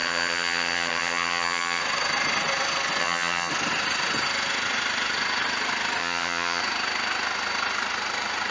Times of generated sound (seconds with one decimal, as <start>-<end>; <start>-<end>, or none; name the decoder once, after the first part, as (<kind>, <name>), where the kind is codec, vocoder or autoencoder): 0.0-1.8 (vocoder, HiFi-GAN); 3.0-3.5; 6.0-6.6